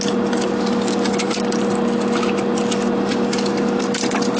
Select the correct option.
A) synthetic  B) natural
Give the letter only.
B